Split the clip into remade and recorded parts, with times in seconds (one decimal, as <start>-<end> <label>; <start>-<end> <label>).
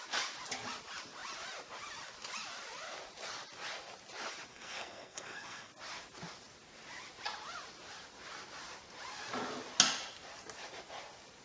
0.0-4.5 recorded; 4.5-5.7 remade; 5.7-11.4 recorded